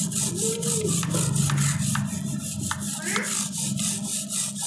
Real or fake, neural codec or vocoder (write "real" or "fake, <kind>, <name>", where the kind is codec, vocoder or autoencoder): real